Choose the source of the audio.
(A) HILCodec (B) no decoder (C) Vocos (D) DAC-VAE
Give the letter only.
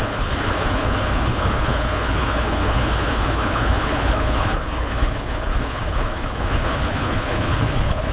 A